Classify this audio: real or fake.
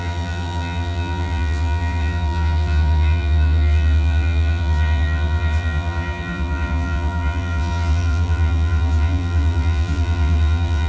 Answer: fake